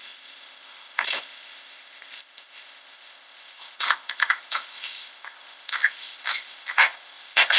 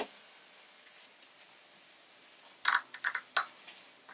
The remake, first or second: first